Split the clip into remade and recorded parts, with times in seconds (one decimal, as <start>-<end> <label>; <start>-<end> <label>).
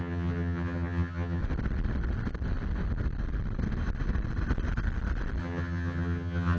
0.0-1.4 remade; 1.4-5.4 recorded; 5.4-6.6 remade